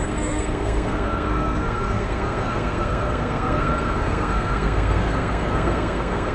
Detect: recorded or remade remade